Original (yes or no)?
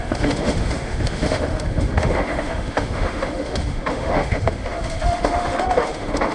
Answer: no